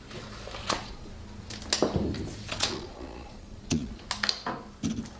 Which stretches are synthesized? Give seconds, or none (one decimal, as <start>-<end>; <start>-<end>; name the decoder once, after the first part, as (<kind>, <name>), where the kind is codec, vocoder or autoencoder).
0.6-1.1 (vocoder, Vocos); 2.5-4.0